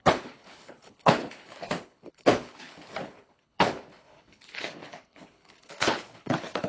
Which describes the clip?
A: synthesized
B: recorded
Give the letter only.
A